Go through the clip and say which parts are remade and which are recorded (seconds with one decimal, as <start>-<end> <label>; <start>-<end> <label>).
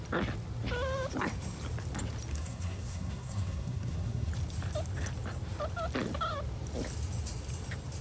0.0-2.3 recorded; 2.3-4.3 remade; 4.3-8.0 recorded